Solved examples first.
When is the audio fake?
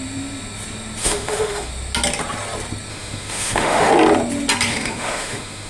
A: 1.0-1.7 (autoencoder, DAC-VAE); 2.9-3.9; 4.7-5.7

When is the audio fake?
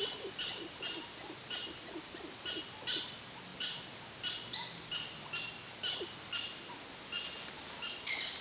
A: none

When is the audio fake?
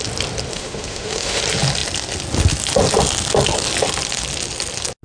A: 0.5-1.4 (autoencoder, DAC-VAE)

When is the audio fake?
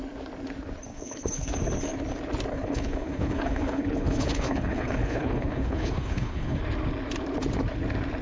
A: 0.9-1.5 (codec, HILCodec); 2.5-6.6